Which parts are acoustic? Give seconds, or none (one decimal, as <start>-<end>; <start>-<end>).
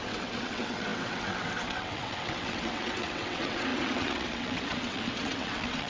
none